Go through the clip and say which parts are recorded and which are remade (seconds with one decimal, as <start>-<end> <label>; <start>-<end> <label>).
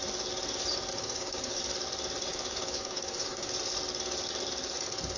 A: 0.0-0.9 recorded; 0.9-1.6 remade; 1.6-2.3 recorded; 2.3-3.5 remade; 3.5-5.2 recorded